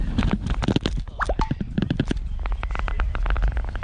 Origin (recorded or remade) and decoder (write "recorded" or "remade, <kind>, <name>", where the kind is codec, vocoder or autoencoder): remade, vocoder, BigVGAN v2